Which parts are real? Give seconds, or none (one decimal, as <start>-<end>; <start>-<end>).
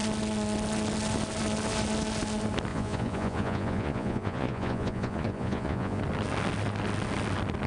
0.0-2.7; 6.0-7.7